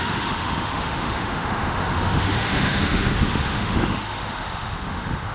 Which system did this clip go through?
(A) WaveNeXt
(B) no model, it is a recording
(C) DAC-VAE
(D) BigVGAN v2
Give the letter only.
C